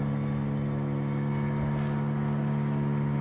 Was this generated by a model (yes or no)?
no